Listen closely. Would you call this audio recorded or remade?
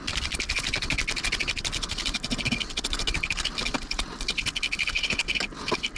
recorded